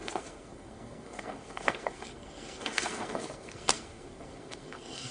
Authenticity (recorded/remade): remade